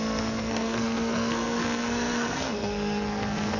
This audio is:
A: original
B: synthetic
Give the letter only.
B